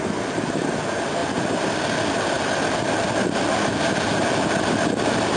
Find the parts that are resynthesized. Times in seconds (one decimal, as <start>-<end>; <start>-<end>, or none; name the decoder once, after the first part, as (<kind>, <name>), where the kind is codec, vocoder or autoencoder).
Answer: none